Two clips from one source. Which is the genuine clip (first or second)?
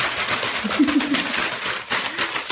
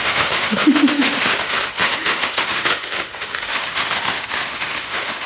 first